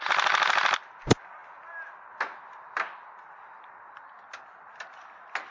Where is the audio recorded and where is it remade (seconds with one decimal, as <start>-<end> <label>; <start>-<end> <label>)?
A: 0.0-5.5 recorded